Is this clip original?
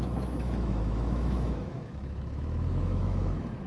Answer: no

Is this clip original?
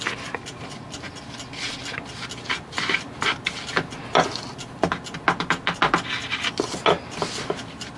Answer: yes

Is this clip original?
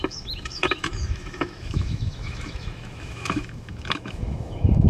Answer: no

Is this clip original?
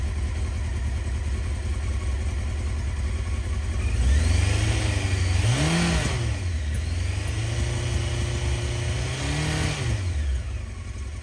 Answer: yes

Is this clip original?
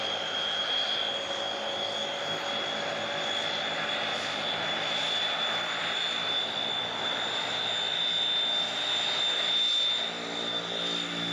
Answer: yes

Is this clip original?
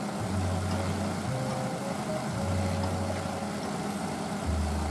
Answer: yes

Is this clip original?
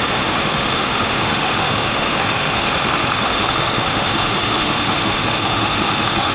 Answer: no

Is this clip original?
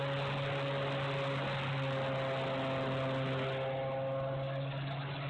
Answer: yes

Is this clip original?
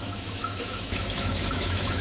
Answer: no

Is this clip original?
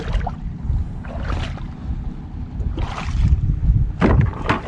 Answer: yes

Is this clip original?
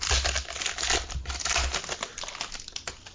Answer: yes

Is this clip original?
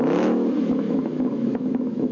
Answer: no